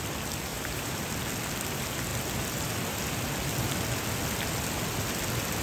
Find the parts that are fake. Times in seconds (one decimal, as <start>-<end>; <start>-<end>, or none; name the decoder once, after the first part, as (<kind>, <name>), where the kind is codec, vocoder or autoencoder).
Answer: 0.5-1.0 (vocoder, BigVGAN v2)